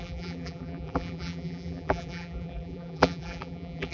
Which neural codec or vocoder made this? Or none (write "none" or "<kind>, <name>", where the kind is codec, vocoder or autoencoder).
vocoder, BigVGAN v2